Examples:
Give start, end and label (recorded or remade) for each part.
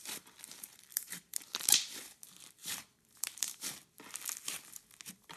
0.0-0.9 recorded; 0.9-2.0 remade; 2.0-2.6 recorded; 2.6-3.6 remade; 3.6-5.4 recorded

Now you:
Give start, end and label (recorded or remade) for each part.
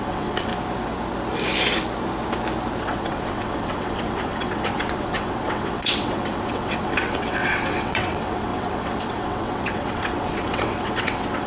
0.0-0.5 remade; 0.5-2.8 recorded; 2.8-11.5 remade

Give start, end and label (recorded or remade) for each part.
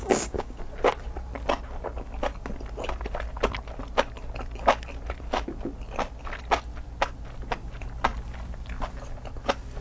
0.0-0.6 remade; 0.6-9.8 recorded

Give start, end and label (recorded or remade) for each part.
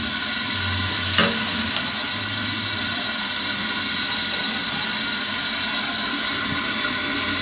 0.0-7.4 recorded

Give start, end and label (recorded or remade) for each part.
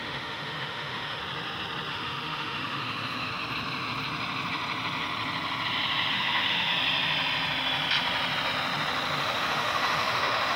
0.0-1.2 remade; 1.2-1.9 recorded; 1.9-3.3 remade; 3.3-6.1 recorded; 6.1-6.7 remade; 6.7-9.2 recorded; 9.2-10.6 remade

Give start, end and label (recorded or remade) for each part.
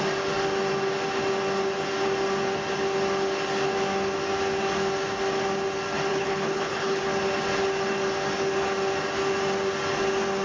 0.0-6.1 recorded; 6.1-7.0 remade; 7.0-10.4 recorded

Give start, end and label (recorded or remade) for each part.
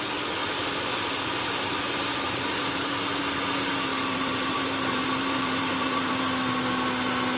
0.0-0.4 recorded; 0.4-2.9 remade; 2.9-3.9 recorded; 3.9-6.1 remade; 6.1-7.4 recorded